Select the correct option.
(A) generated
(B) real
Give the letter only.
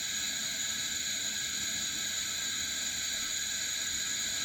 B